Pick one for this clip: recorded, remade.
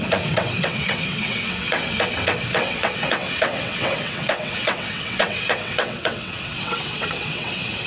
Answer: remade